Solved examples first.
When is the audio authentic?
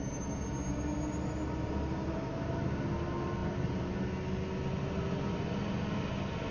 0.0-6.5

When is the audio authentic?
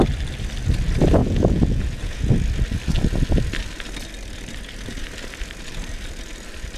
0.0-1.2; 2.3-6.8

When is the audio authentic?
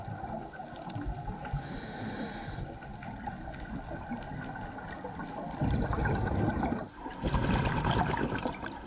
0.0-8.9